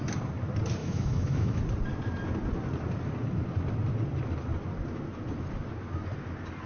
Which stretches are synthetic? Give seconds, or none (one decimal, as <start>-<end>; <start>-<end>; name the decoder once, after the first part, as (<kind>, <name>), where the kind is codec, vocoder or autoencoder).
0.8-1.6 (autoencoder, DAC-VAE)